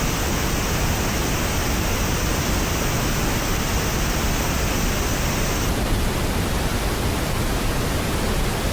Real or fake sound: real